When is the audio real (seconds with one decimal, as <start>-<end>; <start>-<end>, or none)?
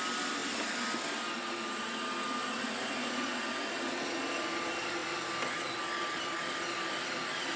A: 0.0-7.6